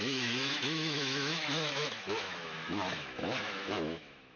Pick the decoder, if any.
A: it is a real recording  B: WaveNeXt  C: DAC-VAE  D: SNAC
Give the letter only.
C